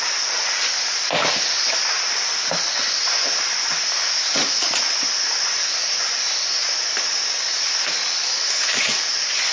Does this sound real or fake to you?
real